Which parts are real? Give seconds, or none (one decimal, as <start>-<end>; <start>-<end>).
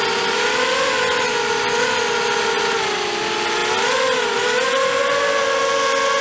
0.0-6.2